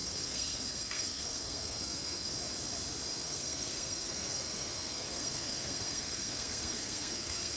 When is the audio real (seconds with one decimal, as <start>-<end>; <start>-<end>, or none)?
2.3-3.1